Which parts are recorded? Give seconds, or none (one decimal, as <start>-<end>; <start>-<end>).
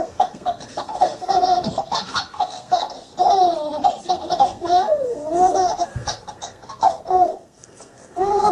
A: 3.1-4.1